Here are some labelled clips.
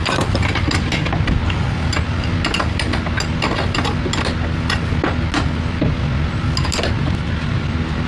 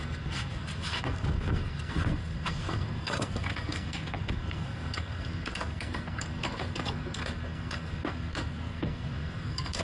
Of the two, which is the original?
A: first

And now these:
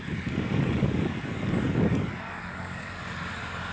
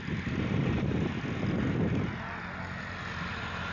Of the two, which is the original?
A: second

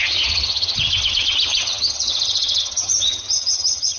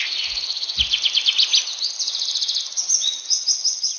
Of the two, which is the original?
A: second